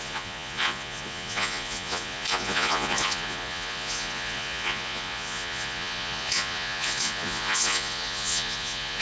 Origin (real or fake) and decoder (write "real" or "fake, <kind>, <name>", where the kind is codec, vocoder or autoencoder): fake, vocoder, Vocos